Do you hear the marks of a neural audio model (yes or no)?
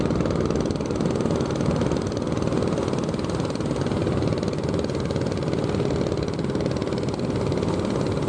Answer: no